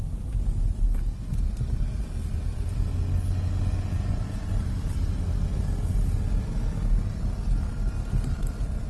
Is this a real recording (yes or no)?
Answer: yes